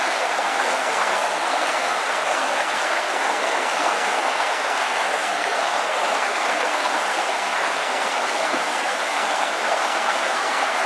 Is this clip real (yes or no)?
no